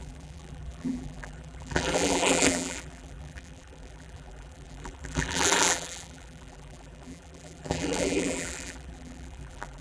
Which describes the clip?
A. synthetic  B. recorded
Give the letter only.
A